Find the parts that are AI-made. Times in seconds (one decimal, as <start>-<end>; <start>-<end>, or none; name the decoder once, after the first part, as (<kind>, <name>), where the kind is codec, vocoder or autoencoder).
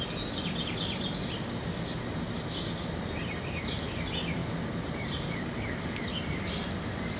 none